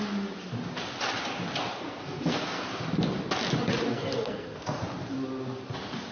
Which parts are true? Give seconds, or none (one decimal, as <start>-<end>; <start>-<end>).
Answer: 0.0-1.7; 2.8-3.9; 4.8-6.1